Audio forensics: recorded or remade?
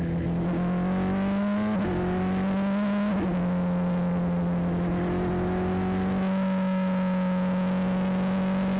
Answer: recorded